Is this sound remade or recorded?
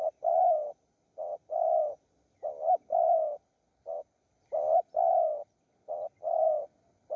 recorded